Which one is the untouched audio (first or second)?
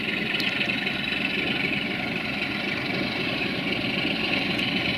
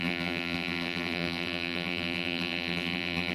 first